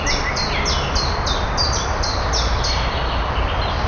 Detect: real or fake real